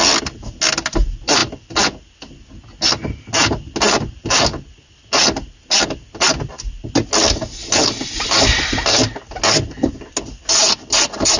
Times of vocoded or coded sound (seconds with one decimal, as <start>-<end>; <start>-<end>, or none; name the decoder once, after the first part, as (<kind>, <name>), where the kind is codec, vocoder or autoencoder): none

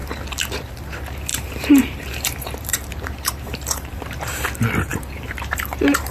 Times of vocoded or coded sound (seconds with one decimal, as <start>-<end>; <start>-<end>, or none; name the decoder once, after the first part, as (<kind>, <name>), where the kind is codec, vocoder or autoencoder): 0.0-0.7 (vocoder, BigVGAN v2); 1.3-4.3; 4.9-6.1